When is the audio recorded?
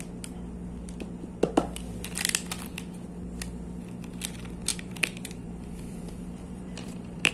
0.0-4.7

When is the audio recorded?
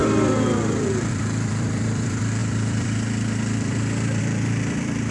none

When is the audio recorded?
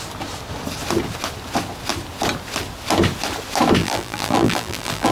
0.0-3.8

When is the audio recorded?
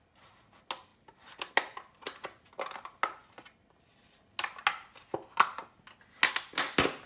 0.0-0.9; 1.5-7.1